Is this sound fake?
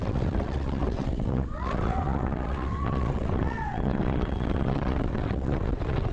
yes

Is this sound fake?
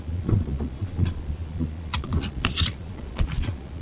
yes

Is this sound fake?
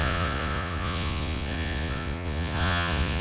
yes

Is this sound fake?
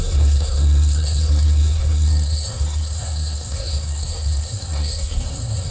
yes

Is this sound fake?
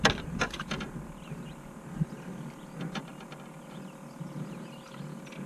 no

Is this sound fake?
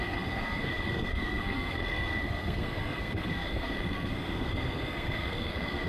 yes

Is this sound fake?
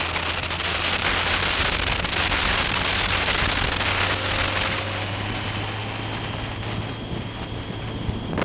no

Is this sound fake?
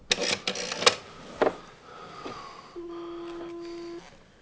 no